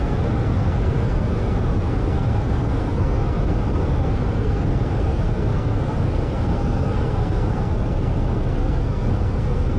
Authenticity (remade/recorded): remade